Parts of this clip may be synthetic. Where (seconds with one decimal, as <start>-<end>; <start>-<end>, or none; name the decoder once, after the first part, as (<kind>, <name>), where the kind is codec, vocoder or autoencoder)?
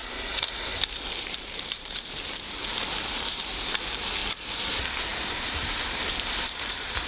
1.4-4.2 (vocoder, BigVGAN v2); 5.0-7.1